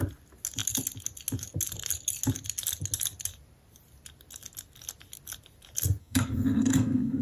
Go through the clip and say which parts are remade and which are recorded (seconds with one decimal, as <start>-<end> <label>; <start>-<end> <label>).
0.0-6.0 recorded; 6.0-7.2 remade